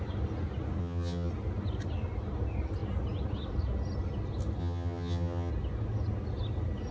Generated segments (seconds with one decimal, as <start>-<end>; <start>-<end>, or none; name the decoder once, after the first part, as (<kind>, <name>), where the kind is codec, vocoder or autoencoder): 0.8-1.3 (vocoder, HiFi-GAN); 4.6-5.5